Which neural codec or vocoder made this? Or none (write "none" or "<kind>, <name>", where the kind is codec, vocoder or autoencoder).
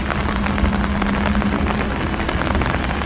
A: none